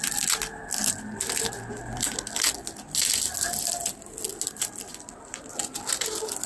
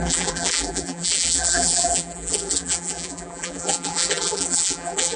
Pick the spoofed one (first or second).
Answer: second